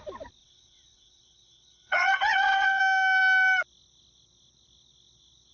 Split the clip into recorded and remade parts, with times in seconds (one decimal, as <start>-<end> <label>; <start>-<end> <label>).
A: 0.0-0.4 recorded; 0.4-2.8 remade; 2.8-5.5 recorded

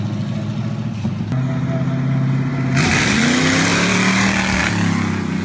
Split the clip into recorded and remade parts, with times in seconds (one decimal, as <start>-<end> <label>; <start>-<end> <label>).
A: 0.0-2.5 recorded; 2.5-3.2 remade; 3.2-3.7 recorded; 3.7-4.6 remade; 4.6-5.4 recorded

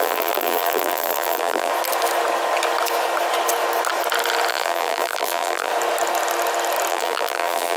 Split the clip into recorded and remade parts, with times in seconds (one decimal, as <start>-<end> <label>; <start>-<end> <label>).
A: 0.0-1.7 remade; 1.7-4.5 recorded; 4.5-5.7 remade; 5.7-6.9 recorded; 6.9-7.8 remade

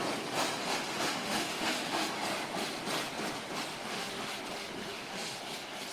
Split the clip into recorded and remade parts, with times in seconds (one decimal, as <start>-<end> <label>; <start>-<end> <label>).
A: 0.0-0.6 recorded; 0.6-2.1 remade; 2.1-3.7 recorded; 3.7-4.3 remade; 4.3-4.8 recorded; 4.8-5.4 remade; 5.4-5.9 recorded

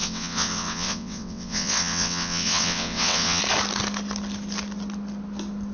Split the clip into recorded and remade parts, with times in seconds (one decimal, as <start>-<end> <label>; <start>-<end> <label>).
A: 0.0-3.4 remade; 3.4-5.7 recorded